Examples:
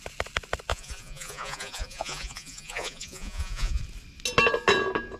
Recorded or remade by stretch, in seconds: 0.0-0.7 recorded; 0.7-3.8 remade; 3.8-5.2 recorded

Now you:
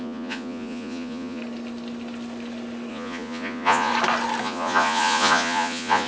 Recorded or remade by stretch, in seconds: 0.0-1.4 remade; 1.4-2.9 recorded; 2.9-3.9 remade; 3.9-4.4 recorded; 4.4-6.1 remade